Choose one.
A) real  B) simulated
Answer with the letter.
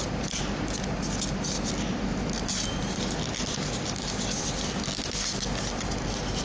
A